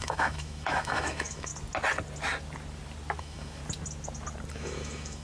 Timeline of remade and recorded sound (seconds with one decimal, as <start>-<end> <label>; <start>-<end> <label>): 0.0-1.5 remade; 1.5-3.2 recorded; 3.2-3.6 remade; 3.6-4.5 recorded; 4.5-5.2 remade

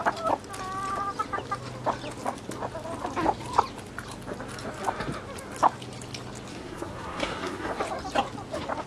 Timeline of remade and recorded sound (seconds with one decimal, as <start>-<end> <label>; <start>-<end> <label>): 0.0-6.5 recorded; 6.5-7.8 remade; 7.8-8.9 recorded

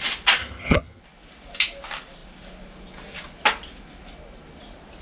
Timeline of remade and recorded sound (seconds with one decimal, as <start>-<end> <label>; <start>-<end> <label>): 0.0-0.4 recorded; 0.4-1.0 remade; 1.0-5.0 recorded